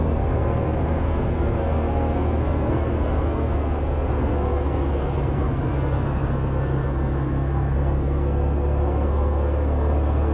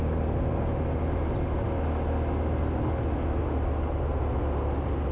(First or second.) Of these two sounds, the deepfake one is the first